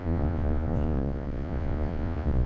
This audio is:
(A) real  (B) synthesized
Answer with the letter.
B